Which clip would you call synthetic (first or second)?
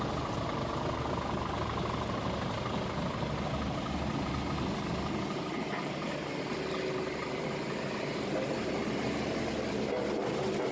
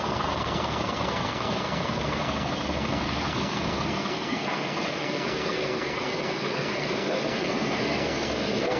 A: second